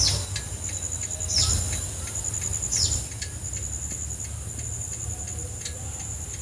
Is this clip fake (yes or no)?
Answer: no